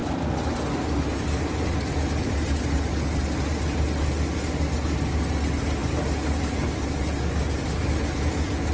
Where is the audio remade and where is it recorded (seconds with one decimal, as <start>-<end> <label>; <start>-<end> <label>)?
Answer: 0.0-2.4 remade; 2.4-8.7 recorded